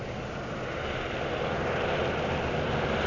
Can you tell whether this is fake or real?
real